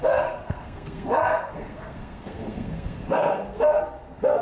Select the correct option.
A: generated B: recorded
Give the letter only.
A